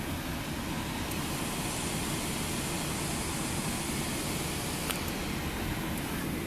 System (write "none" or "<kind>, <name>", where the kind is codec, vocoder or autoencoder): none